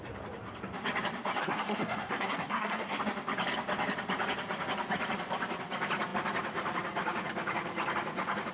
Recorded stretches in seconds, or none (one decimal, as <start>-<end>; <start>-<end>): 0.0-1.4; 3.0-8.5